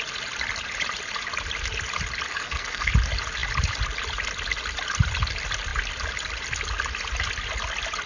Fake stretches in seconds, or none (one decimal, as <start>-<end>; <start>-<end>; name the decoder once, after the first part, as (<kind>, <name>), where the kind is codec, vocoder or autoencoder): 2.3-2.9 (codec, SNAC)